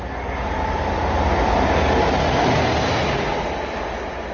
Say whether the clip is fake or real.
real